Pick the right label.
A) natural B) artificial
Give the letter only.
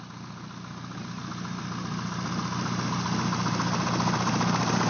A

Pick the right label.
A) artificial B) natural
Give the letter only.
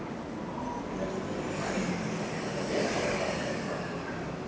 B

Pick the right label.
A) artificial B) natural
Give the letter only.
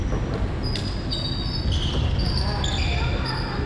B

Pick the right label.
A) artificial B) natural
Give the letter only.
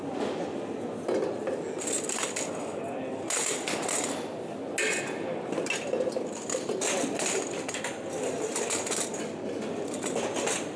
B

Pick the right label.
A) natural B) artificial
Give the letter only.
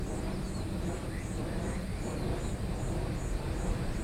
A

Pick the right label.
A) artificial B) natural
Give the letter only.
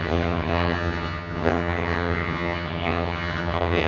A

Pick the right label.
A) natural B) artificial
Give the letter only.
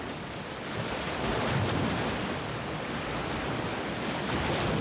A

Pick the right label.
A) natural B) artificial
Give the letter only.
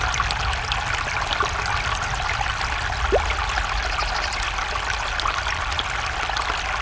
A